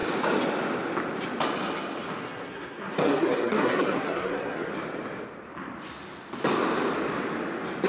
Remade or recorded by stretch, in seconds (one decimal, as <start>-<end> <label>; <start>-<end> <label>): 0.0-2.2 recorded; 2.2-4.7 remade; 4.7-7.9 recorded